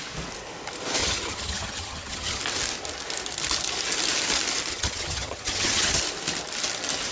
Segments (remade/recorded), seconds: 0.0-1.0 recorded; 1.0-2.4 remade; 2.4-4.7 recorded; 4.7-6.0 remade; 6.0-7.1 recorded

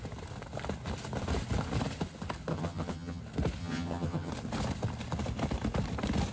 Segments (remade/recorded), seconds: 0.0-2.5 recorded; 2.5-3.2 remade; 3.2-3.6 recorded; 3.6-4.3 remade; 4.3-6.3 recorded

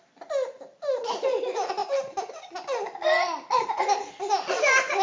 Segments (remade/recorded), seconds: 0.0-5.0 recorded

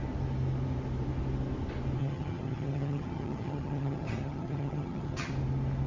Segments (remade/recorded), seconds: 0.0-2.0 recorded; 2.0-5.3 remade; 5.3-5.9 recorded

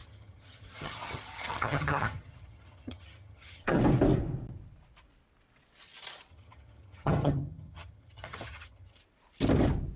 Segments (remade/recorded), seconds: 0.0-3.8 remade; 3.8-6.3 recorded; 6.3-9.0 remade; 9.0-10.0 recorded

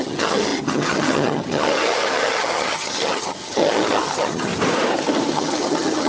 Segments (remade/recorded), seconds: 0.0-4.5 remade; 4.5-5.3 recorded; 5.3-6.1 remade